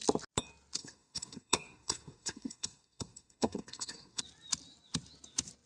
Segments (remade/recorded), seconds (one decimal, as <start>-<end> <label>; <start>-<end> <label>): 0.0-0.8 recorded; 0.8-4.2 remade; 4.2-5.7 recorded